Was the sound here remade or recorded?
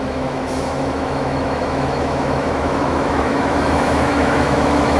remade